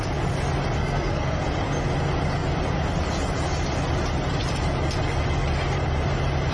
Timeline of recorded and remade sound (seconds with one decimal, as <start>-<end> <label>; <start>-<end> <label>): 0.0-0.8 recorded; 0.8-1.4 remade; 1.4-6.5 recorded